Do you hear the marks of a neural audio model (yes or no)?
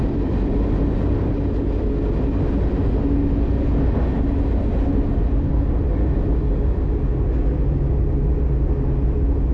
no